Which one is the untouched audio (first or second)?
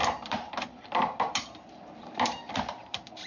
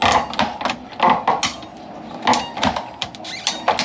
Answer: second